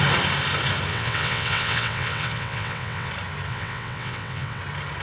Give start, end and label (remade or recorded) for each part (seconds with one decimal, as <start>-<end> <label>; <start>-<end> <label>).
0.0-0.9 recorded; 0.9-3.1 remade; 3.1-3.5 recorded; 3.5-4.6 remade; 4.6-5.0 recorded

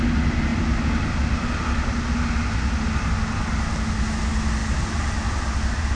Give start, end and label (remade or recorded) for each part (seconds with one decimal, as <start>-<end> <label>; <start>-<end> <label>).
0.0-5.9 recorded

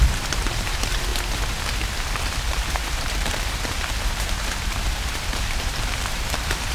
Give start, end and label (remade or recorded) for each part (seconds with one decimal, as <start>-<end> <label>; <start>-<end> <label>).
0.0-1.1 remade; 1.1-2.2 recorded; 2.2-6.7 remade

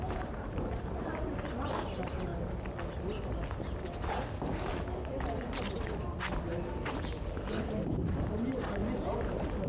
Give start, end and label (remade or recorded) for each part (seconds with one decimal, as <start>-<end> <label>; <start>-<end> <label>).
0.0-2.3 remade; 2.3-7.6 recorded; 7.6-8.8 remade; 8.8-9.7 recorded

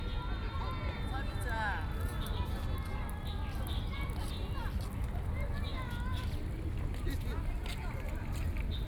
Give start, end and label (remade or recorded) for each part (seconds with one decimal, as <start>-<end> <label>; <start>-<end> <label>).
0.0-8.9 recorded

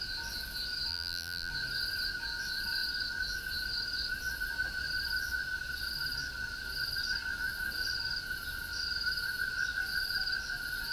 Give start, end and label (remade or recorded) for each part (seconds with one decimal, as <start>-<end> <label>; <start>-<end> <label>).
0.0-0.9 recorded; 0.9-1.5 remade; 1.5-10.9 recorded

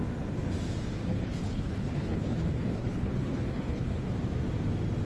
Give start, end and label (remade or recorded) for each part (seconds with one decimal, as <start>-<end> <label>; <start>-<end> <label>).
0.0-1.1 recorded; 1.1-4.1 remade; 4.1-5.0 recorded

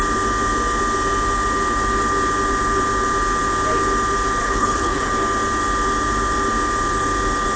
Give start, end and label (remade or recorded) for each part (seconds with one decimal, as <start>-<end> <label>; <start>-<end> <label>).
0.0-4.4 recorded; 4.4-5.1 remade; 5.1-7.6 recorded